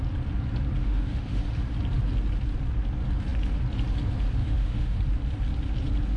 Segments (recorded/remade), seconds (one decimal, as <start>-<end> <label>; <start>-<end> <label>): 0.0-0.8 recorded; 0.8-1.4 remade; 1.4-4.4 recorded; 4.4-5.0 remade; 5.0-6.2 recorded